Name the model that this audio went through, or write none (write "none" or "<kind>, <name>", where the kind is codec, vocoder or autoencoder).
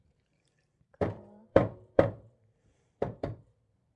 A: vocoder, BigVGAN v2